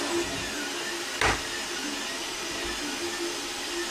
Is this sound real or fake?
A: real